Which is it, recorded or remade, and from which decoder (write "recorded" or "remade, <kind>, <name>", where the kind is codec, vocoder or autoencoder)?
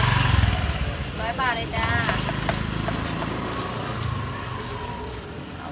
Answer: recorded